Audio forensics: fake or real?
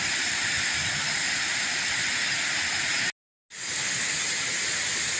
real